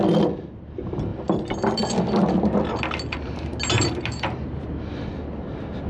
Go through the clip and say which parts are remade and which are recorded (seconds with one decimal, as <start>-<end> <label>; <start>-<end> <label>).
0.0-5.9 recorded